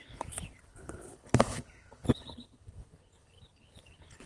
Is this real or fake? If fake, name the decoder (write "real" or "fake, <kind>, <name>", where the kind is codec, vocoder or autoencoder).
fake, codec, HILCodec